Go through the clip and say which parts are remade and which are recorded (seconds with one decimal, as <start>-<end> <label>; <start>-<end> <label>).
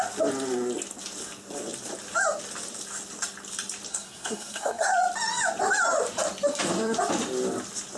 0.0-3.9 recorded; 3.9-4.9 remade; 4.9-8.0 recorded